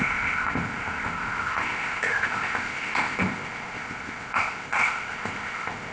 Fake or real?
fake